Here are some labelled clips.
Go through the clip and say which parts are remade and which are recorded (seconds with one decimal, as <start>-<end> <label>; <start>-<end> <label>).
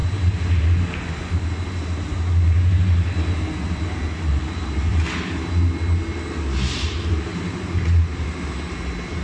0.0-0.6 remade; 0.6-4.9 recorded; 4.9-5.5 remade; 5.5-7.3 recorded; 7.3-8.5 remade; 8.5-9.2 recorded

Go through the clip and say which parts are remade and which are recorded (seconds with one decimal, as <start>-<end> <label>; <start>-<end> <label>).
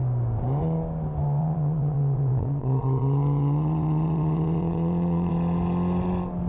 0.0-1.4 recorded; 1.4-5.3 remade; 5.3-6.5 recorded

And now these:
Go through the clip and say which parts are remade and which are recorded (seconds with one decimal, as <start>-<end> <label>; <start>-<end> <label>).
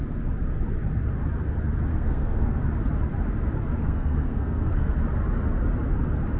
0.0-1.9 recorded; 1.9-2.6 remade; 2.6-3.8 recorded; 3.8-5.0 remade; 5.0-6.4 recorded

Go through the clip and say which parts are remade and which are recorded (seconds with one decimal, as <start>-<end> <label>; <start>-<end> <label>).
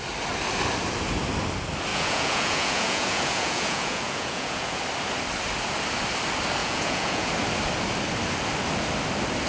0.0-1.9 recorded; 1.9-4.8 remade; 4.8-6.6 recorded; 6.6-7.3 remade; 7.3-9.5 recorded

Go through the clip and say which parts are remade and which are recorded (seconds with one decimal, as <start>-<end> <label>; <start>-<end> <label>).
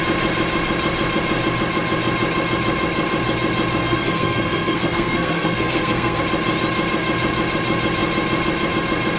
0.0-3.8 recorded; 3.8-6.2 remade; 6.2-9.2 recorded